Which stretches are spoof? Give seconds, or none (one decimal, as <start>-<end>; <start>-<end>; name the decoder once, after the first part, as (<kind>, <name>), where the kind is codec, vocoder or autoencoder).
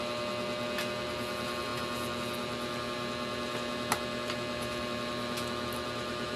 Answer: none